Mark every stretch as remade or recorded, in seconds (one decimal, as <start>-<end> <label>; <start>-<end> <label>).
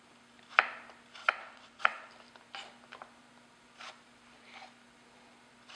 0.0-1.2 recorded; 1.2-2.1 remade; 2.1-5.8 recorded